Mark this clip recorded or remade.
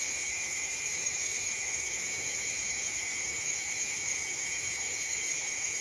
remade